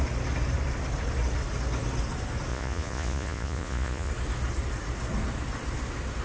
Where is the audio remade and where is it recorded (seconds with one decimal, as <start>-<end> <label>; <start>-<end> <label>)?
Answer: 0.0-2.5 recorded; 2.5-4.1 remade; 4.1-6.2 recorded